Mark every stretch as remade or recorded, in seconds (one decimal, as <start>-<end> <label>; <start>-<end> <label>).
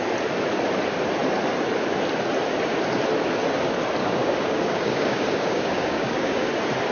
0.0-4.0 recorded; 4.0-6.5 remade; 6.5-6.9 recorded